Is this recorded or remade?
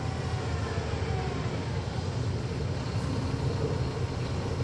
recorded